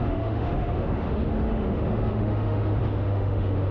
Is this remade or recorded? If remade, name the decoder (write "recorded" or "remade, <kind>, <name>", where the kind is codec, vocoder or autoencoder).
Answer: remade, autoencoder, DAC-VAE